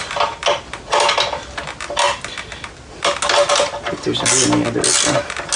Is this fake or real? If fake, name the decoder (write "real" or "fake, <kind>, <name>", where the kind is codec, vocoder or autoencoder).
real